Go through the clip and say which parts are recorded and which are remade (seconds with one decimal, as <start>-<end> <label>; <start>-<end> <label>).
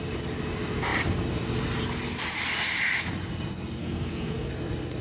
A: 0.0-3.8 recorded; 3.8-4.5 remade; 4.5-5.0 recorded